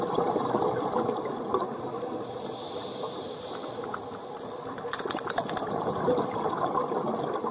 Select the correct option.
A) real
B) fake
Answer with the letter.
A